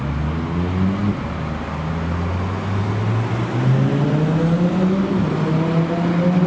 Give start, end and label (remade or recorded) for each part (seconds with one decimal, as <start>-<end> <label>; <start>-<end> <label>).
0.0-6.5 recorded